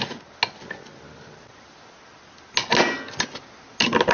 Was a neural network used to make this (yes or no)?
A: no